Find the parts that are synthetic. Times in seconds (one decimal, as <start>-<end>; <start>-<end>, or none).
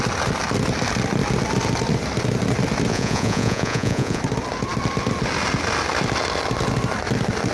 2.9-4.2